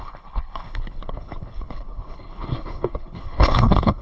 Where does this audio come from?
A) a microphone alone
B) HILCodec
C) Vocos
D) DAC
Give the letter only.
B